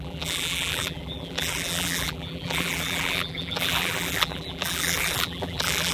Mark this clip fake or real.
fake